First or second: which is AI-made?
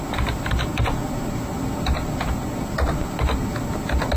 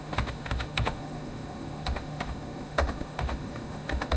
second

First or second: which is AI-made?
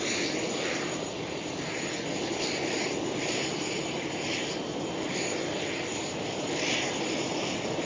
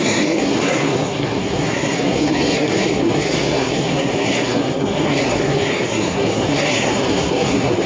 second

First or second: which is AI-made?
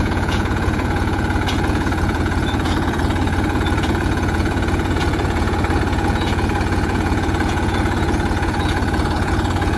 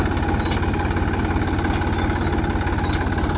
first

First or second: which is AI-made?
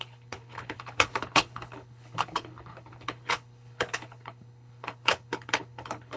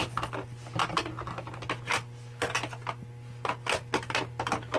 first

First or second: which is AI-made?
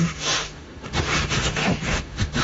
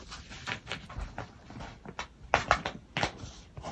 first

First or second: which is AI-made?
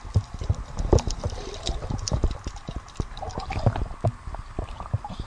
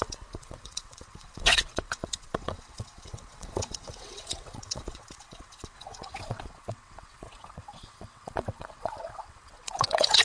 second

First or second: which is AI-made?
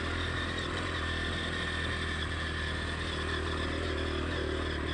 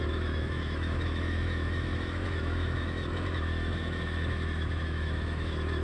second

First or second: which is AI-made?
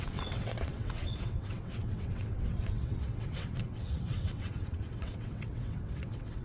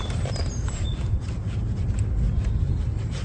first